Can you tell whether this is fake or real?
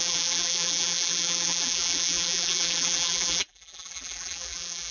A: fake